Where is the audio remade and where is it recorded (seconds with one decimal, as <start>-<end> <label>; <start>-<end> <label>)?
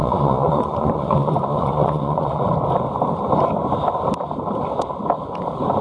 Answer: 0.0-2.4 remade; 2.4-5.8 recorded